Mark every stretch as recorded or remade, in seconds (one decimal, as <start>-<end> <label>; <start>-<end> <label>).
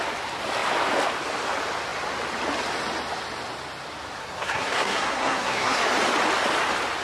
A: 0.0-4.2 recorded; 4.2-5.8 remade; 5.8-7.0 recorded